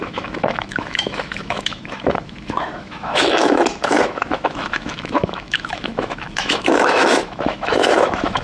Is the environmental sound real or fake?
fake